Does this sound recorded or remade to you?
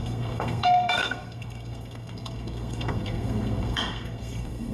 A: remade